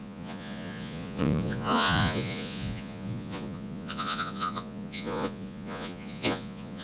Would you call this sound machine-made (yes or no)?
yes